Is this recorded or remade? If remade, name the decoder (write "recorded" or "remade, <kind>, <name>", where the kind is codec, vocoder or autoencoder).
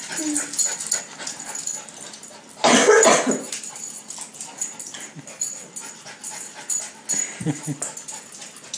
recorded